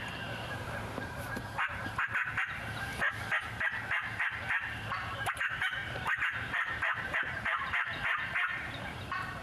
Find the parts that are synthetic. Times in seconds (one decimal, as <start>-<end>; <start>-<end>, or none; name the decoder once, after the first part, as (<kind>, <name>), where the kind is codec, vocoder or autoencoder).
0.0-2.9 (vocoder, BigVGAN v2); 3.6-9.4